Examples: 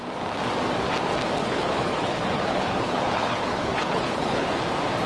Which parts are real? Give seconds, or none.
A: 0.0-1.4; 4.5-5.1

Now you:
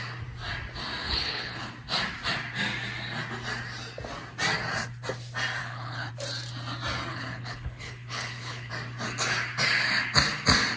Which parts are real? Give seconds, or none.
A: 0.0-1.0; 1.7-5.6; 6.1-7.1; 8.7-10.8

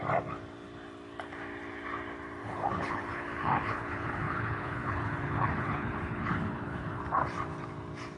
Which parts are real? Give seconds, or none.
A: 0.0-2.4; 7.0-8.2

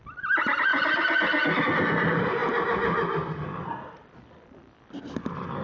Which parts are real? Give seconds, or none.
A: 0.0-5.6

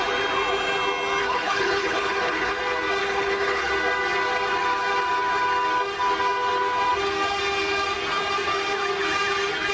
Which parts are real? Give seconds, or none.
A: 0.0-1.2; 2.6-3.0; 3.7-9.7

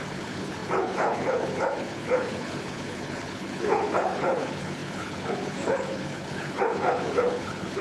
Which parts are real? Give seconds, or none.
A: none

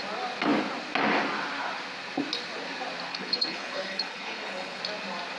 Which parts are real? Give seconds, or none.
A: 0.0-3.1; 4.8-5.4